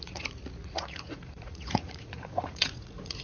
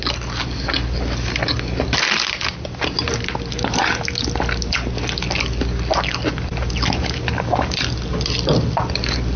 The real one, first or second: second